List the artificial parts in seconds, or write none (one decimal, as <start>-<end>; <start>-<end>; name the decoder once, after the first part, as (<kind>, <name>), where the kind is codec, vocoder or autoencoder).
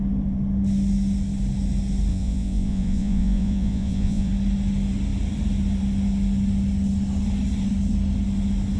2.1-4.3 (vocoder, Vocos)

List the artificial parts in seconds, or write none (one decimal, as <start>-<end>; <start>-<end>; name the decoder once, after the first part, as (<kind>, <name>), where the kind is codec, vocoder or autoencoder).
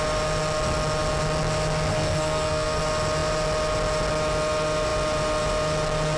1.9-2.8 (codec, SNAC)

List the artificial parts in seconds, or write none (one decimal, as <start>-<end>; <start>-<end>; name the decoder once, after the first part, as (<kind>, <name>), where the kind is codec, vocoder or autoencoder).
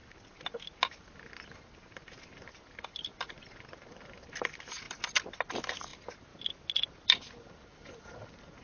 none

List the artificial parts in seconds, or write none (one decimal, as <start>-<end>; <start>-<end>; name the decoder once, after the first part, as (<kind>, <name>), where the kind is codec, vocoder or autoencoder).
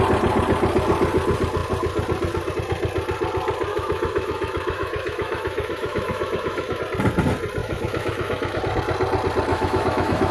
3.7-6.8 (autoencoder, DAC-VAE); 7.6-8.6; 9.5-10.3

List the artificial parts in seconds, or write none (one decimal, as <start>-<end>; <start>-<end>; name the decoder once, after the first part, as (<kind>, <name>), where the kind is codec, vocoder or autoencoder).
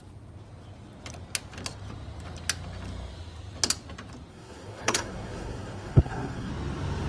4.3-6.5 (codec, SNAC)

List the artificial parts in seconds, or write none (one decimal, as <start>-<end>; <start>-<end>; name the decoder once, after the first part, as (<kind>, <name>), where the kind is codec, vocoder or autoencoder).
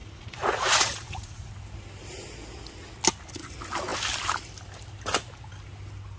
0.0-1.5 (vocoder, Vocos)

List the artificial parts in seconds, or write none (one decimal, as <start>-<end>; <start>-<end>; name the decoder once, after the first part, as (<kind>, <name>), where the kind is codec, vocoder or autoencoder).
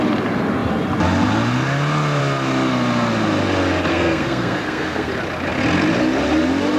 3.9-5.1 (codec, SNAC)